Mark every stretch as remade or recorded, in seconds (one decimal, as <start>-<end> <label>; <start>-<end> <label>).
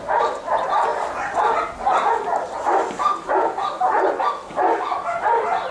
0.0-5.7 recorded